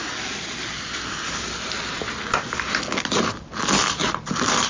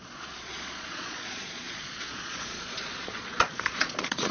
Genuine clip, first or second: first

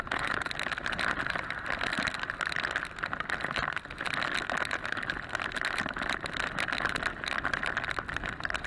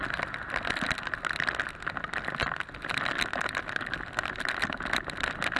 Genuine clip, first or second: second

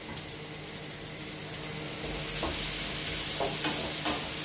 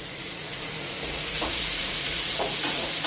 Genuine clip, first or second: first